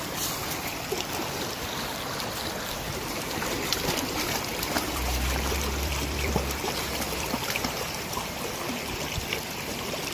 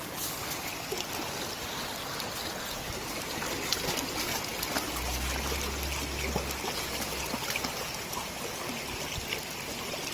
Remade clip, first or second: first